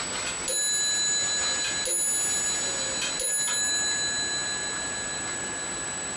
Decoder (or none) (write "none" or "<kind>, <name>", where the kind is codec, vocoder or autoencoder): none